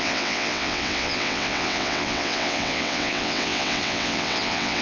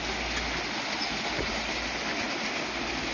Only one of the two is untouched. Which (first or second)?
second